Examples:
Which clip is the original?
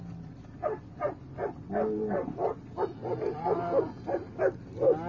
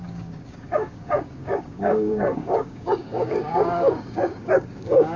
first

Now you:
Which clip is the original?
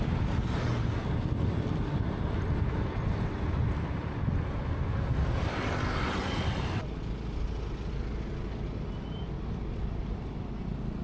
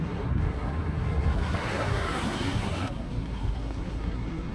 first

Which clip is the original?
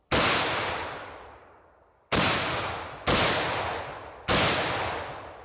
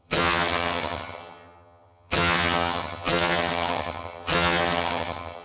first